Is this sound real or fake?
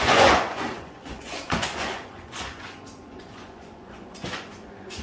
fake